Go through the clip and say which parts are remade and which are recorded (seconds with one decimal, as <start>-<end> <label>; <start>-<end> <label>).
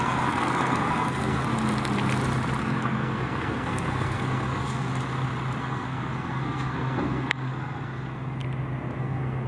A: 0.0-1.5 remade; 1.5-2.6 recorded; 2.6-4.9 remade; 4.9-5.6 recorded; 5.6-8.4 remade; 8.4-9.0 recorded; 9.0-9.5 remade